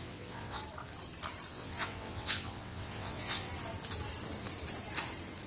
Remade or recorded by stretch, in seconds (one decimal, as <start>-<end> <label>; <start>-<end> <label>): 0.0-0.6 remade; 0.6-1.5 recorded; 1.5-3.5 remade; 3.5-5.5 recorded

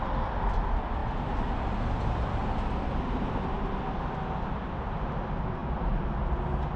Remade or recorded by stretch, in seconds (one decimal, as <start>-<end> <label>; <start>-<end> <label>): 0.0-6.8 recorded

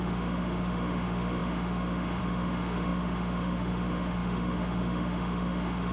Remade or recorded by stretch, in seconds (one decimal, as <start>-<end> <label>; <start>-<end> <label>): 0.0-5.9 remade